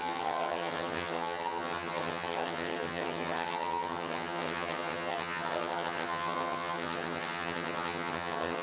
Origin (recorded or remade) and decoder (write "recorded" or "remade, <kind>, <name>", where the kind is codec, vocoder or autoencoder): remade, vocoder, HiFi-GAN